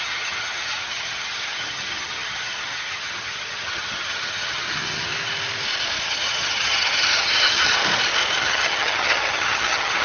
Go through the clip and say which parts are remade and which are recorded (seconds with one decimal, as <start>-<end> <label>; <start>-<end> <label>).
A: 0.0-5.1 remade; 5.1-6.0 recorded; 6.0-7.8 remade; 7.8-8.4 recorded; 8.4-10.0 remade